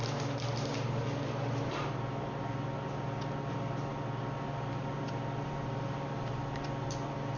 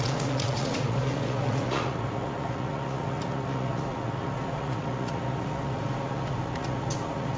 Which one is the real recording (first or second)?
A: first